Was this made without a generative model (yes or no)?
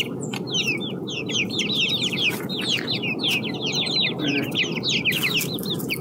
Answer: yes